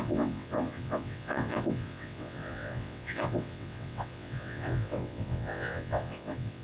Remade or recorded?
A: remade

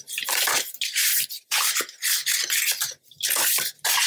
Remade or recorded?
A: recorded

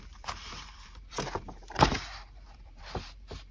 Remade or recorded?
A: remade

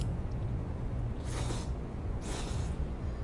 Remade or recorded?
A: remade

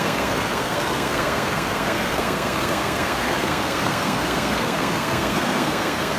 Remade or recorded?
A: remade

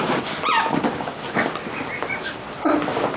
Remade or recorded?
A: recorded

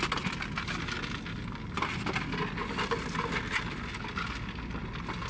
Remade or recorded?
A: recorded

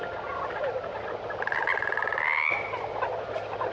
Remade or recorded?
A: recorded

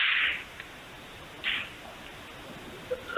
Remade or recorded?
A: recorded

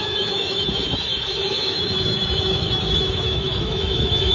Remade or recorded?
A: remade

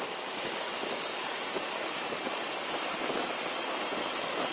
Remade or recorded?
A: recorded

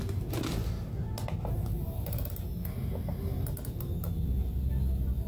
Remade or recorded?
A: recorded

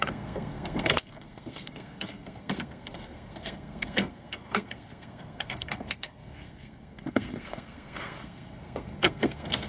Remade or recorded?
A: remade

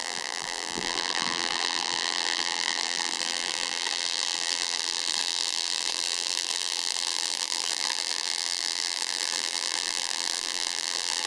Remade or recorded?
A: remade